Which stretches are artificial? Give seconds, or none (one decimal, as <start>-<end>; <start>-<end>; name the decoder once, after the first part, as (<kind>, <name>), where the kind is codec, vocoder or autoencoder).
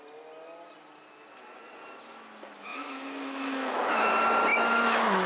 2.7-4.0 (autoencoder, DAC-VAE); 4.5-5.3